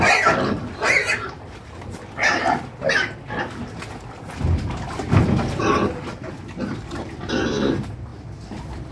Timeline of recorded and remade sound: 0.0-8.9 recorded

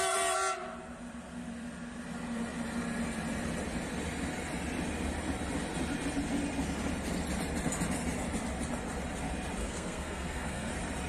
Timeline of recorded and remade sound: 0.0-9.6 recorded; 9.6-10.7 remade; 10.7-11.1 recorded

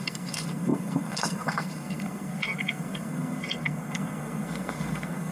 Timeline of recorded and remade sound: 0.0-5.3 remade

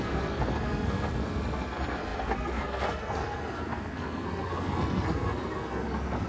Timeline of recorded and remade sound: 0.0-6.3 remade

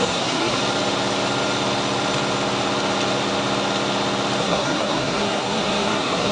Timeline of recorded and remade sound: 0.0-0.6 remade; 0.6-4.4 recorded; 4.4-6.3 remade